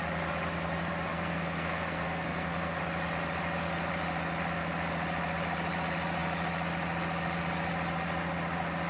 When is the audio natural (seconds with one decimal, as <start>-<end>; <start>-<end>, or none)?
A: 0.0-1.1; 2.8-8.9